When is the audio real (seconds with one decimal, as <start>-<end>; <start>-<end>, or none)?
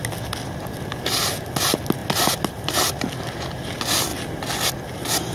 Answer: 0.0-5.3